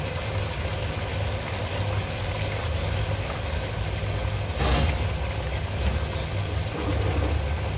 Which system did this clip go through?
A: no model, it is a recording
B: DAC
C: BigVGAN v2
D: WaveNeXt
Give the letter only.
A